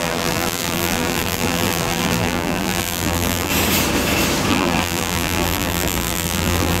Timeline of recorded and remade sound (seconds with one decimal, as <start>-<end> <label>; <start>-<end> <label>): 0.0-3.5 remade; 3.5-4.5 recorded; 4.5-6.8 remade